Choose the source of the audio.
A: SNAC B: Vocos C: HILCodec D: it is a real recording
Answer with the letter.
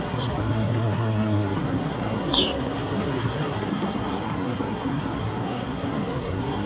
A